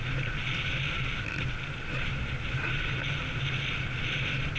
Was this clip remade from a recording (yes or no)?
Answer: no